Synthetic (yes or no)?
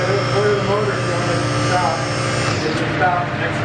no